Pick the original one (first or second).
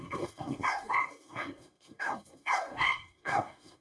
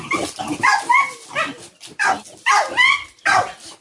second